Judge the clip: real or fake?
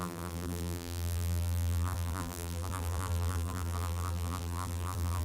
fake